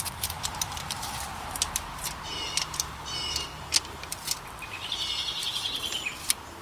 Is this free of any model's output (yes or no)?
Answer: no